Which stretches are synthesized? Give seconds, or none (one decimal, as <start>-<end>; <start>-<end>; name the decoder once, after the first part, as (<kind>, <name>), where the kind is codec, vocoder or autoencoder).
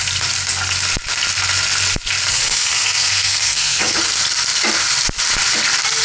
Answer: 2.3-4.0 (codec, SNAC)